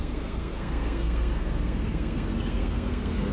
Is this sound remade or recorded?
remade